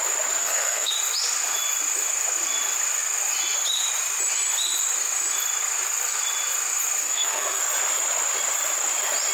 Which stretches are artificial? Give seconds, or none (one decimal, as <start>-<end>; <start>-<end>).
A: 0.4-0.9; 7.0-7.6